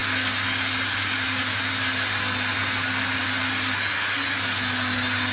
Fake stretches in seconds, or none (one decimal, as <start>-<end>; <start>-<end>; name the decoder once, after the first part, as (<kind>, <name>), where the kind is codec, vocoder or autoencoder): none